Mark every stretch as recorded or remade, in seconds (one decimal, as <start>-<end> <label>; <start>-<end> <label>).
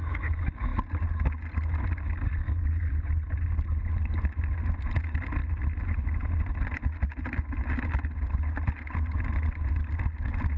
0.0-10.6 recorded